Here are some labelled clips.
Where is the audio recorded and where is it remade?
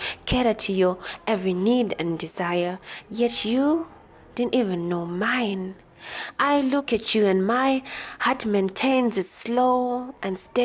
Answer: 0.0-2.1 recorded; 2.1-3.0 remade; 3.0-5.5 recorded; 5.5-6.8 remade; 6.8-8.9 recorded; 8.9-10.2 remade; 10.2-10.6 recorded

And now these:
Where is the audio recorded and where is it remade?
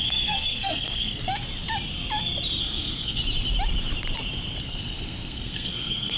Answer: 0.0-1.3 remade; 1.3-2.6 recorded; 2.6-3.2 remade; 3.2-4.6 recorded; 4.6-6.2 remade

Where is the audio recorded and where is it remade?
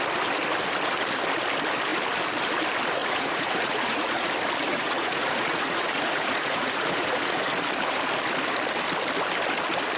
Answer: 0.0-3.0 recorded; 3.0-4.3 remade; 4.3-4.7 recorded; 4.7-7.5 remade; 7.5-10.0 recorded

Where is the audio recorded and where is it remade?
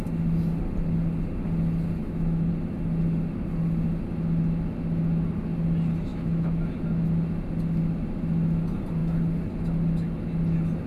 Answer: 0.0-2.0 recorded; 2.0-2.5 remade; 2.5-6.1 recorded; 6.1-6.7 remade; 6.7-10.9 recorded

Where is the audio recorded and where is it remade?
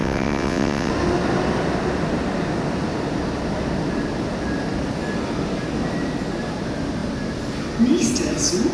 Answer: 0.0-0.9 remade; 0.9-8.7 recorded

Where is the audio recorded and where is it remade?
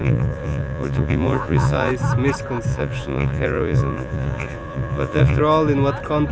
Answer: 0.0-1.9 remade; 1.9-2.7 recorded; 2.7-5.4 remade; 5.4-6.3 recorded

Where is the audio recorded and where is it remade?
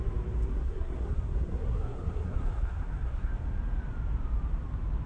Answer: 0.0-0.5 recorded; 0.5-3.3 remade; 3.3-5.1 recorded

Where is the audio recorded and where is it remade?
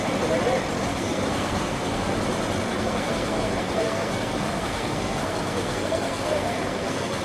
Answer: 0.0-0.9 recorded; 0.9-2.2 remade; 2.2-2.7 recorded; 2.7-7.2 remade